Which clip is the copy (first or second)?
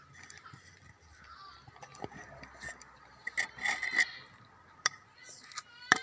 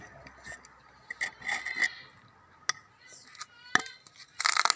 first